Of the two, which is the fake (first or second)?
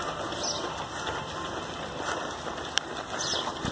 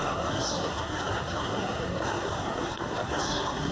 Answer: second